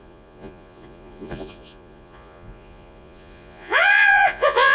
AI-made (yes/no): yes